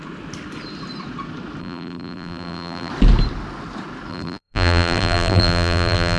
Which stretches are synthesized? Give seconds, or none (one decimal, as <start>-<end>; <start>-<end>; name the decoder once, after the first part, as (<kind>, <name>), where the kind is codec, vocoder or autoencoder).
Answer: 1.6-2.9 (vocoder, BigVGAN v2); 4.1-6.2